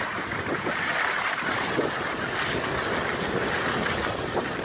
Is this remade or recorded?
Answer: recorded